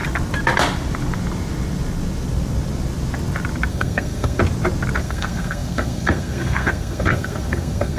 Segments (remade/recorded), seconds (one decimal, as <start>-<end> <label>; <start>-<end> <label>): 0.0-3.7 recorded; 3.7-4.4 remade; 4.4-5.0 recorded; 5.0-8.0 remade